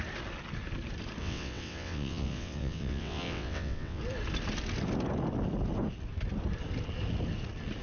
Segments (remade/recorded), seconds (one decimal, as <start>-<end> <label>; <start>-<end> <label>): 0.0-1.2 recorded; 1.2-4.0 remade; 4.0-7.8 recorded